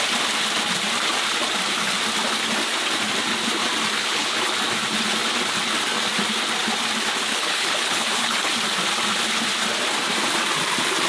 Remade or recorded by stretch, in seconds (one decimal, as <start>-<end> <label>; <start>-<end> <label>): 0.0-4.0 recorded; 4.0-4.5 remade; 4.5-7.3 recorded; 7.3-8.5 remade; 8.5-11.1 recorded